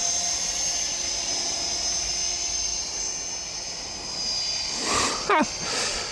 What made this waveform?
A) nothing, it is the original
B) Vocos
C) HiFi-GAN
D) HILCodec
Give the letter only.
A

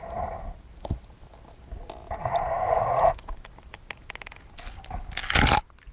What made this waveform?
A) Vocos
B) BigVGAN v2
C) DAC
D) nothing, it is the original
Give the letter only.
D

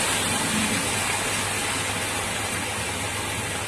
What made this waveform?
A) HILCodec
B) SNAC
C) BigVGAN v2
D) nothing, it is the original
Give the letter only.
D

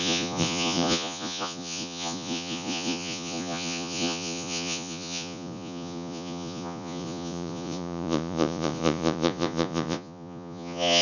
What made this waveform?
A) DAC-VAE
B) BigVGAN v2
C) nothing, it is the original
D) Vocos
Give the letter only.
D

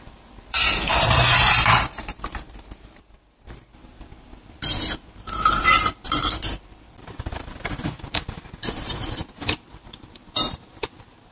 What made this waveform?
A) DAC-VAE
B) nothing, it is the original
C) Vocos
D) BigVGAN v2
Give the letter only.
D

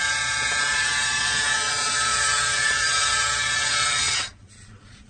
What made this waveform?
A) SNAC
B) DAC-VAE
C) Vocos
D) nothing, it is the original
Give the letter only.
C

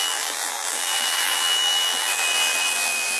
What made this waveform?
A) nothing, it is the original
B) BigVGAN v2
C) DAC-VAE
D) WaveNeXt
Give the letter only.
B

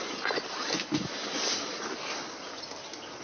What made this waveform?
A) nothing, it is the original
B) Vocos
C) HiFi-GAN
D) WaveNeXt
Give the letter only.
A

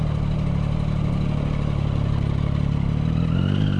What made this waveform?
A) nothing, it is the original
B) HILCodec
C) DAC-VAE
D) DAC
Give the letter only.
A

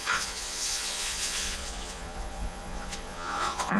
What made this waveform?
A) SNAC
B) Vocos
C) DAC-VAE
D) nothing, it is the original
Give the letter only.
B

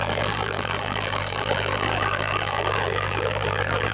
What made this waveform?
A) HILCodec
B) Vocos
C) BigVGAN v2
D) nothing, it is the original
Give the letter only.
C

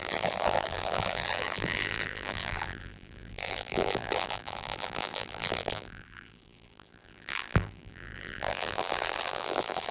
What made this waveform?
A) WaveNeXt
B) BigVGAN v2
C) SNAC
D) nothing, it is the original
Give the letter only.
B